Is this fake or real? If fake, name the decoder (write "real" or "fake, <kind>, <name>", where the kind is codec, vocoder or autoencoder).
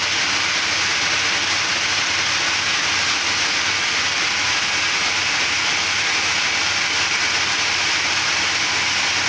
real